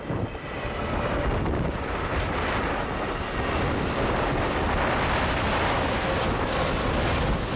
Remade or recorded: recorded